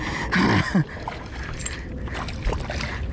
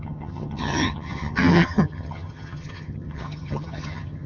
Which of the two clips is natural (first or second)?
first